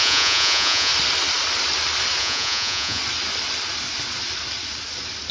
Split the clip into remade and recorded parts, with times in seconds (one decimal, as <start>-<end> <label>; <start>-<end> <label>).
0.0-0.9 remade; 0.9-2.2 recorded; 2.2-3.0 remade; 3.0-5.3 recorded